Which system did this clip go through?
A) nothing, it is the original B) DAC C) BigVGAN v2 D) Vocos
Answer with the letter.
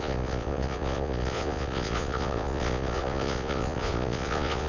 D